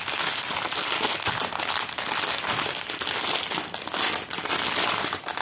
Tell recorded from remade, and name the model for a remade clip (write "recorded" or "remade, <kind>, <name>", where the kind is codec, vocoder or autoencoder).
recorded